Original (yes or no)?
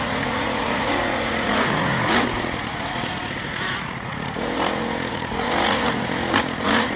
no